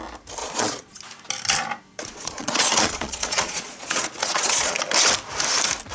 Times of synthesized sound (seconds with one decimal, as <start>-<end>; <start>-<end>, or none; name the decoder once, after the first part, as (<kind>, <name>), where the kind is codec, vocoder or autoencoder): 0.4-1.0 (vocoder, Vocos); 1.9-4.8